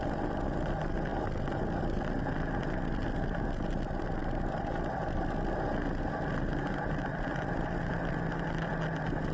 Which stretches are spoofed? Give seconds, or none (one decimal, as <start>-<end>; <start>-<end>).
none